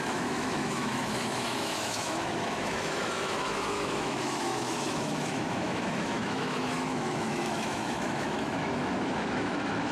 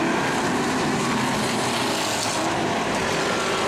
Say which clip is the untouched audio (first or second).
second